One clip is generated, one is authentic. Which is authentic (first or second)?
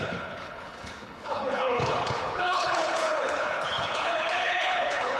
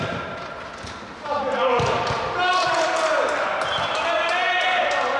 second